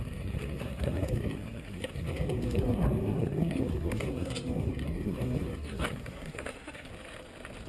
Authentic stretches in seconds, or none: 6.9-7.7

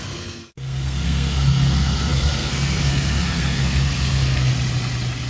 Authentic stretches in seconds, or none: 4.5-5.3

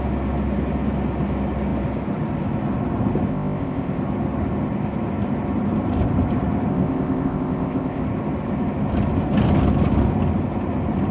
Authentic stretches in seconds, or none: 0.0-3.3; 4.0-6.7; 8.0-11.1

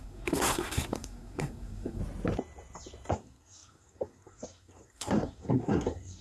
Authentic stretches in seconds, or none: 2.0-3.1

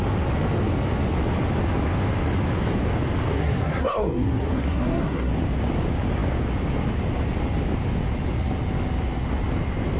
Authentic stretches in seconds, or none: 0.0-3.3; 5.3-10.0

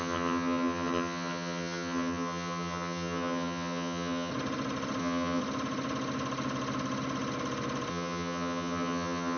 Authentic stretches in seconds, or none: 4.3-5.0; 5.4-7.9